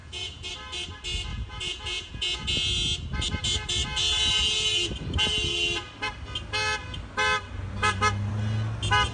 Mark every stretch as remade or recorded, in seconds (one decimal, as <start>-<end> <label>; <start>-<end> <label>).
0.0-0.5 remade; 0.5-1.3 recorded; 1.3-2.5 remade; 2.5-9.1 recorded